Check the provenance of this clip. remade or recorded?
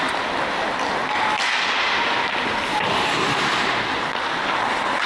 recorded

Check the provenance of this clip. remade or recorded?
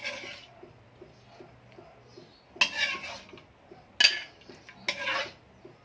recorded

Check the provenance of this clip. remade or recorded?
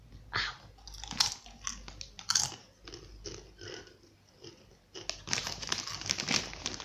recorded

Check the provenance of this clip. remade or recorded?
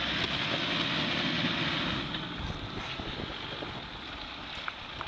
recorded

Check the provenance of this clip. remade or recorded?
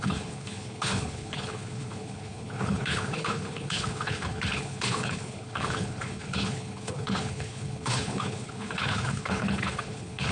remade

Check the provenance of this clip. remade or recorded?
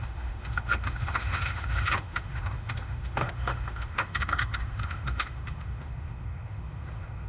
remade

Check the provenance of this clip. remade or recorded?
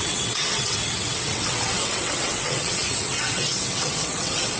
remade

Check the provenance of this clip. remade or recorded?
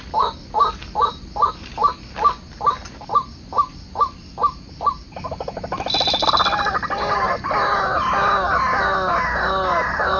recorded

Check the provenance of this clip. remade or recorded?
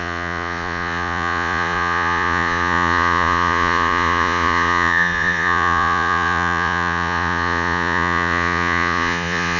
remade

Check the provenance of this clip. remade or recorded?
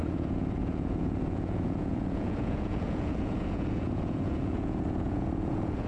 remade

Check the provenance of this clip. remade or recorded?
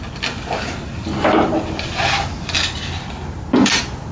recorded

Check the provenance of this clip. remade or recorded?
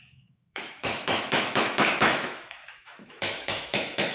remade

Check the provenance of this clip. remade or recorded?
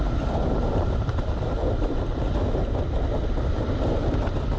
recorded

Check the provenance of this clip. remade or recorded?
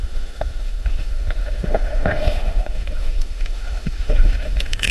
remade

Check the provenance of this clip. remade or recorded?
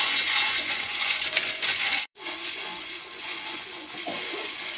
remade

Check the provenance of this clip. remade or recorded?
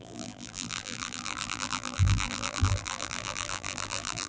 remade